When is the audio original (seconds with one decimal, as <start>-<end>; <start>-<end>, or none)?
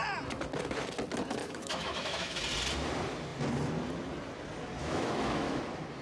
0.0-1.4; 2.4-4.8; 5.6-6.0